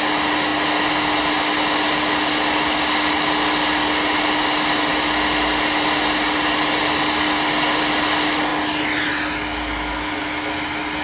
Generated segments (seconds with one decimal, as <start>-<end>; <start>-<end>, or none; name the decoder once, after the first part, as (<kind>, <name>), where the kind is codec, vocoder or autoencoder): none

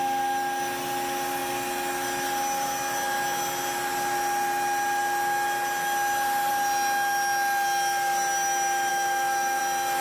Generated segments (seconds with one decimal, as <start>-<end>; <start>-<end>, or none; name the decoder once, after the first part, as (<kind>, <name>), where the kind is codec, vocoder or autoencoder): 8.9-9.6 (autoencoder, DAC-VAE)